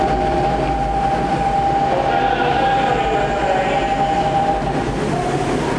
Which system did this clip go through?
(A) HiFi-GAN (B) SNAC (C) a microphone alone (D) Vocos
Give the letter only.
C